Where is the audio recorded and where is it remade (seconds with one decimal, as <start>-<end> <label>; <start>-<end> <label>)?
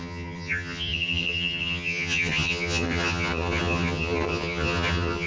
0.0-5.3 remade